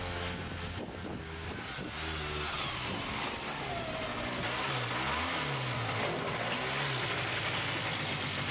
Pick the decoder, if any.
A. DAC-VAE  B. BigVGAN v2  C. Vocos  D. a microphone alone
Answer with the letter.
D